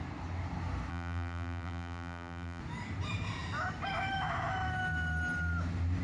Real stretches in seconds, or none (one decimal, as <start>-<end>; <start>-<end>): 0.0-0.9; 2.6-6.0